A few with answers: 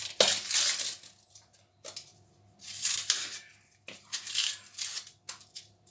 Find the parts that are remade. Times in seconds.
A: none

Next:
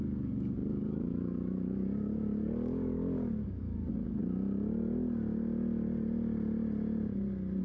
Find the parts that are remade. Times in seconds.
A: 0.0-4.2